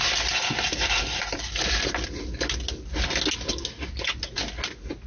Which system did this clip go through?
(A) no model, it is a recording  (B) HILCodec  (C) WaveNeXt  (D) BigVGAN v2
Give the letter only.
A